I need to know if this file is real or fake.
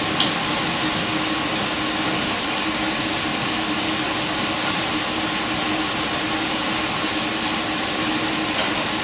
real